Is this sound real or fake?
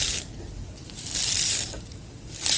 real